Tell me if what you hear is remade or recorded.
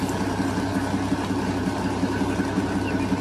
recorded